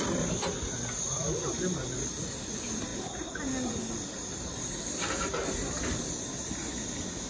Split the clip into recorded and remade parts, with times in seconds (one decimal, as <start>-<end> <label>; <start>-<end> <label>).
0.0-7.3 recorded